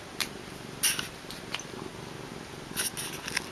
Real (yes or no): yes